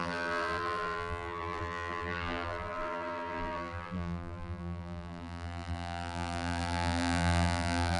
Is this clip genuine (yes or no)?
no